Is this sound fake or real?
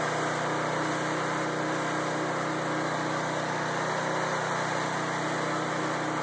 real